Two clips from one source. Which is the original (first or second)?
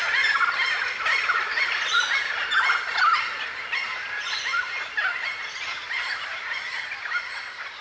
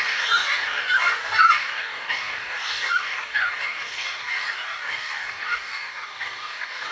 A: first